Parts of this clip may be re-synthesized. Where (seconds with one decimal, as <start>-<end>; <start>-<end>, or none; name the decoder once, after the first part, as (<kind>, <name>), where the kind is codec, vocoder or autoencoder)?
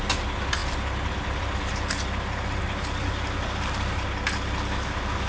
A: none